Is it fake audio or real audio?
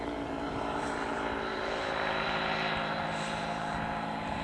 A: fake